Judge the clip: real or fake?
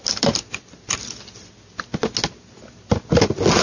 real